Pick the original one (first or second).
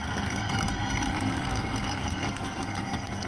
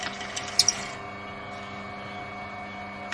second